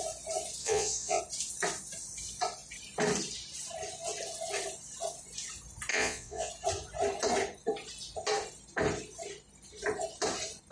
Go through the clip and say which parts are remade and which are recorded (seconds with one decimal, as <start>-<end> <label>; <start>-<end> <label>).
0.0-0.6 recorded; 0.6-1.2 remade; 1.2-5.9 recorded; 5.9-6.5 remade; 6.5-10.7 recorded

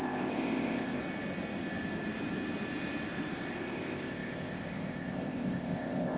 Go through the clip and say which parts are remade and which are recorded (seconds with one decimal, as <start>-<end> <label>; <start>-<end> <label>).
0.0-1.0 remade; 1.0-3.5 recorded; 3.5-6.2 remade